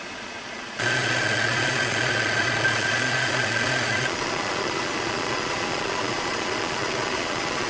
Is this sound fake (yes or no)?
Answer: yes